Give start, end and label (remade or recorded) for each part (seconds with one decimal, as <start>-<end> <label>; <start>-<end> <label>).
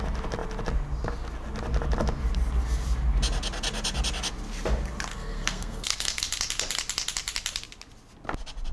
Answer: 0.0-5.1 recorded; 5.1-6.2 remade; 6.2-8.7 recorded